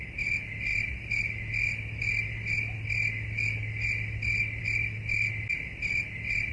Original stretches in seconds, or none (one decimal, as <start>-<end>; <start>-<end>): 0.0-6.5